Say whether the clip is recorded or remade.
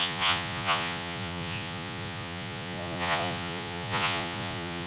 remade